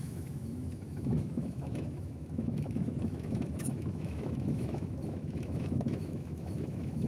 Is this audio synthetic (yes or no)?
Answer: yes